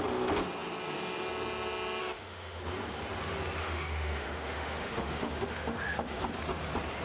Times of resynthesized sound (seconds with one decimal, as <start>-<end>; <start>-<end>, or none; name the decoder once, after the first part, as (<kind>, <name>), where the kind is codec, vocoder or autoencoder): 2.0-2.6 (autoencoder, DAC-VAE); 3.6-6.2